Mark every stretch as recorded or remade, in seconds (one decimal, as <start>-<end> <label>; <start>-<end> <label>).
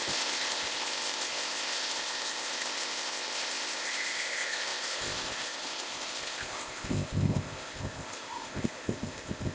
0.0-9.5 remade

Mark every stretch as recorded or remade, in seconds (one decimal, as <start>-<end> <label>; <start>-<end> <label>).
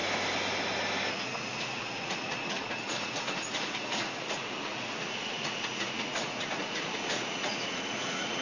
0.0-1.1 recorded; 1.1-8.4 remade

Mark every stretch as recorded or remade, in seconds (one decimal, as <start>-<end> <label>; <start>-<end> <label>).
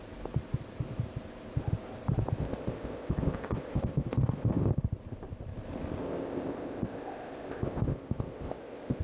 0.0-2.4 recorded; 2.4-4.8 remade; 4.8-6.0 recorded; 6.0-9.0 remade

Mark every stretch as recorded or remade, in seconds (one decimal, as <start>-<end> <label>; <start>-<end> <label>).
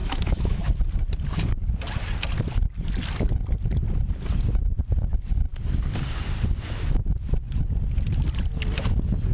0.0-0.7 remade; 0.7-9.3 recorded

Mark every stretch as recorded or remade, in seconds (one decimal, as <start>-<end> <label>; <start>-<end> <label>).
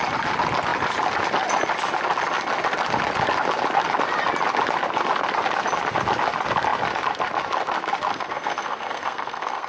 0.0-8.1 recorded; 8.1-9.7 remade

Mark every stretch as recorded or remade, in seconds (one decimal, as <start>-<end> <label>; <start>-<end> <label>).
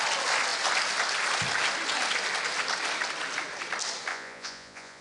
0.0-4.1 recorded; 4.1-5.0 remade